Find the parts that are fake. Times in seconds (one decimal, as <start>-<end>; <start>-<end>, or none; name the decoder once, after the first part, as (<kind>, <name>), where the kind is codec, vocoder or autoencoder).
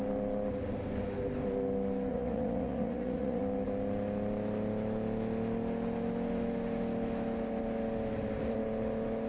2.1-3.4 (vocoder, Vocos)